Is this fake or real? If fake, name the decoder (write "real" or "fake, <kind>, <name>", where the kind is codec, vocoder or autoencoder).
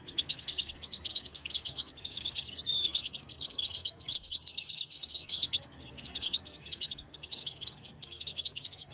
fake, codec, SNAC